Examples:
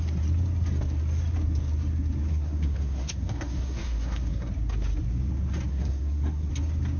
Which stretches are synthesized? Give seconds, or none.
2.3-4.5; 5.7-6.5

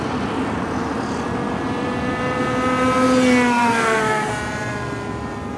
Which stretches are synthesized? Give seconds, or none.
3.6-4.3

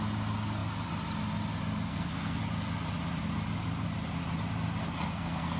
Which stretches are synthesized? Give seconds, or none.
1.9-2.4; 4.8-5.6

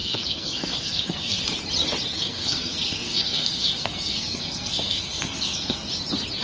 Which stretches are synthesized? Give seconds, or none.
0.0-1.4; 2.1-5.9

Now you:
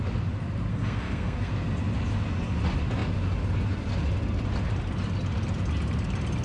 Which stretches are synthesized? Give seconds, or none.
0.7-1.5

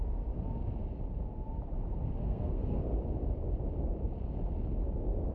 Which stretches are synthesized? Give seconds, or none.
2.2-2.8

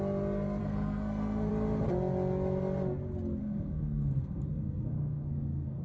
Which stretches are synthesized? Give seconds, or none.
0.6-1.5; 3.4-5.8

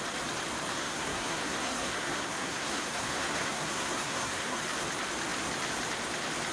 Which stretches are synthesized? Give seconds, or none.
0.7-4.6